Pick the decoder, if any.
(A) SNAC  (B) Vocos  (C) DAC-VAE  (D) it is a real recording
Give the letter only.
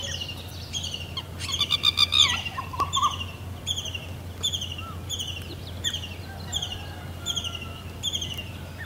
D